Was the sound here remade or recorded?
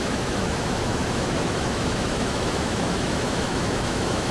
remade